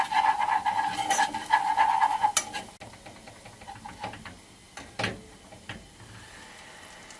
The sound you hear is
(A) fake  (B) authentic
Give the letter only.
B